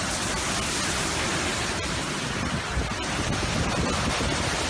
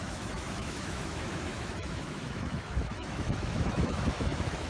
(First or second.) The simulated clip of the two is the second